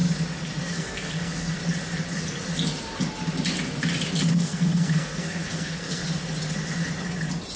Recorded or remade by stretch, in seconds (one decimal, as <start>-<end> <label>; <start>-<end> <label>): 0.0-0.6 recorded; 0.6-1.6 remade; 1.6-4.3 recorded; 4.3-6.0 remade; 6.0-7.6 recorded